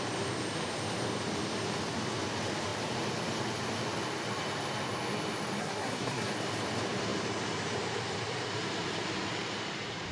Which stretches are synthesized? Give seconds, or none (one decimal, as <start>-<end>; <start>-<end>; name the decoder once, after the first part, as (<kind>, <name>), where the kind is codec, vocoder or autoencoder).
5.6-6.3 (codec, SNAC)